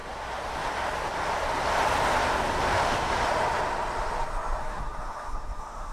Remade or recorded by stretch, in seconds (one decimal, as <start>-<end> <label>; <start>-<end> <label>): 0.0-2.7 recorded; 2.7-3.1 remade; 3.1-4.6 recorded; 4.6-5.9 remade